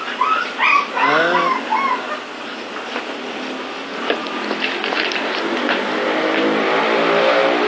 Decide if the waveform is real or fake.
real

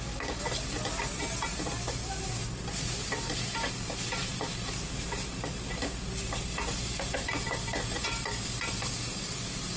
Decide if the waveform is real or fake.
real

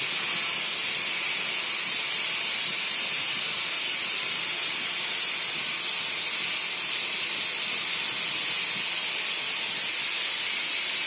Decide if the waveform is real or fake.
real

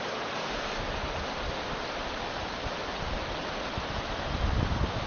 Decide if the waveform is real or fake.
real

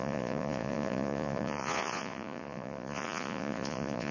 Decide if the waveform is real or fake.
fake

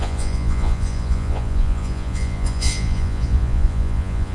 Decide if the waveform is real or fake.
fake